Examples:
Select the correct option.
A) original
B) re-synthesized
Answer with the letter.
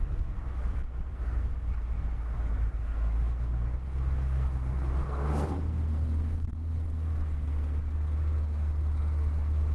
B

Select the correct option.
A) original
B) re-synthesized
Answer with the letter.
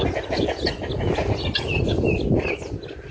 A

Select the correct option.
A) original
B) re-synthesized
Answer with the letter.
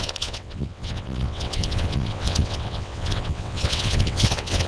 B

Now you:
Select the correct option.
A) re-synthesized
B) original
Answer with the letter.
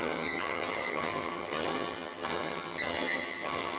A